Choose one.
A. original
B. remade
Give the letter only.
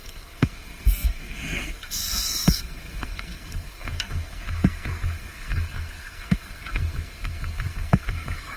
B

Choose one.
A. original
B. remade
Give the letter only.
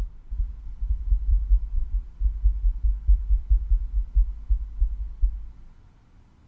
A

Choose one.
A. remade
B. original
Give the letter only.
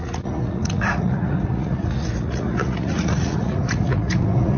A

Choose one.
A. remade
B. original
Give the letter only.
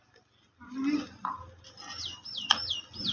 B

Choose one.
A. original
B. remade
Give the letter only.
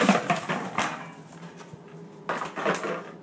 A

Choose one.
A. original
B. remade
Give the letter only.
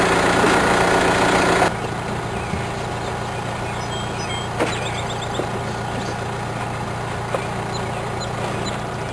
A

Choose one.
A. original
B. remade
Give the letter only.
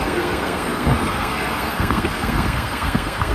B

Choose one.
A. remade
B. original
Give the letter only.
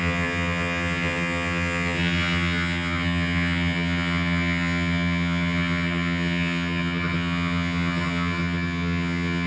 A